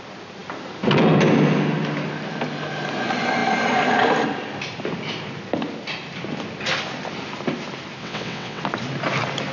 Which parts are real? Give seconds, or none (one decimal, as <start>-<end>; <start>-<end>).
0.0-8.0; 8.6-9.5